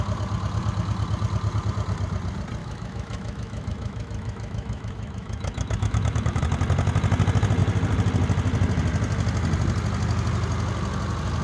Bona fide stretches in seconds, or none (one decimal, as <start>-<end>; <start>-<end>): 0.0-2.6; 6.4-11.4